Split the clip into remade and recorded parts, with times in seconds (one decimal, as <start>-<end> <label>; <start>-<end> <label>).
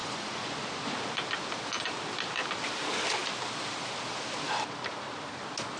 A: 0.0-0.7 remade; 0.7-5.8 recorded